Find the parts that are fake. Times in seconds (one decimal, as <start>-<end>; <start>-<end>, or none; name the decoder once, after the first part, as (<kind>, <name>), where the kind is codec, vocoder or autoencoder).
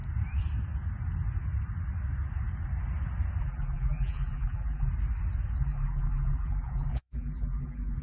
3.4-4.9 (vocoder, BigVGAN v2); 5.6-8.0